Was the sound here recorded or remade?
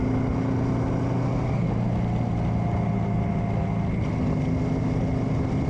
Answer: recorded